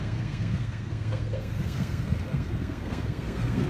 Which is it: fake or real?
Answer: fake